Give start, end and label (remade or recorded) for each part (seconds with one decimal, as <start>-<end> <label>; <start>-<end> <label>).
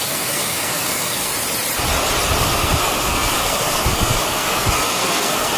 0.0-1.3 remade; 1.3-2.4 recorded; 2.4-5.6 remade